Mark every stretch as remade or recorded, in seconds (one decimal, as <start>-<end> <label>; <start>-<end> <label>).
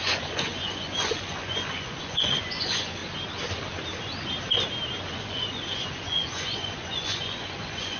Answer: 0.0-3.0 remade; 3.0-5.1 recorded; 5.1-8.0 remade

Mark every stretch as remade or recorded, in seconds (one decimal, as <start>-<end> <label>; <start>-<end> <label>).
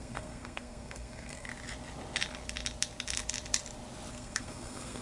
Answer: 0.0-1.5 remade; 1.5-4.1 recorded; 4.1-5.0 remade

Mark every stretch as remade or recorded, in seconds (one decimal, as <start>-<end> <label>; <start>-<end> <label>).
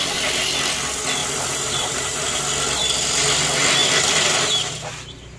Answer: 0.0-1.2 recorded; 1.2-2.4 remade; 2.4-5.4 recorded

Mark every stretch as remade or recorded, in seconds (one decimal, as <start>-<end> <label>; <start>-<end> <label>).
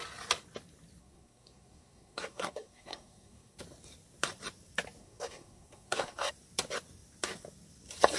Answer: 0.0-1.0 recorded; 1.0-3.6 remade; 3.6-5.0 recorded; 5.0-6.3 remade; 6.3-8.2 recorded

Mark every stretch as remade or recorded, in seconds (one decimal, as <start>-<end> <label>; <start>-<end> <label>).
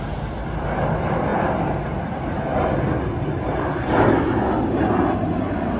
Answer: 0.0-5.8 recorded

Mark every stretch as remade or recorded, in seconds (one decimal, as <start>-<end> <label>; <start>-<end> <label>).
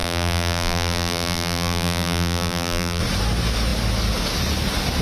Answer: 0.0-3.0 remade; 3.0-5.0 recorded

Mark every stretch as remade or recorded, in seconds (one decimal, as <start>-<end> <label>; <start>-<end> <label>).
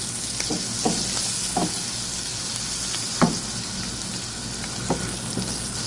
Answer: 0.0-5.9 recorded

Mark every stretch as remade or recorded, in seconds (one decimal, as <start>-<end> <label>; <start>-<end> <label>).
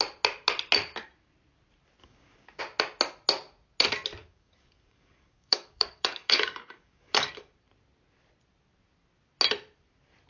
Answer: 0.0-2.0 recorded; 2.0-2.6 remade; 2.6-4.2 recorded; 4.2-7.5 remade; 7.5-10.3 recorded